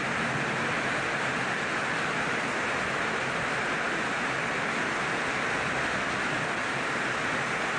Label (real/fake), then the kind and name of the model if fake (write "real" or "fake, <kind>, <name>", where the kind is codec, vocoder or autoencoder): real